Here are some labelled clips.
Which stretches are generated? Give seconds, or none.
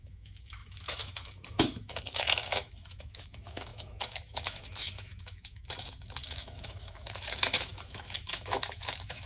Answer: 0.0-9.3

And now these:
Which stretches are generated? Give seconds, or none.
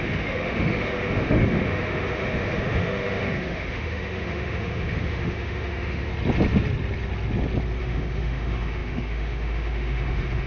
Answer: 0.0-6.1; 7.8-10.5